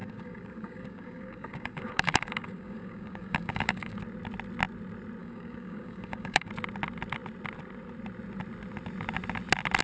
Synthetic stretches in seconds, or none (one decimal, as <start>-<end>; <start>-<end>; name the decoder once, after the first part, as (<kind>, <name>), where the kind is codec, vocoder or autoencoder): 0.0-4.0 (codec, DAC); 5.2-6.5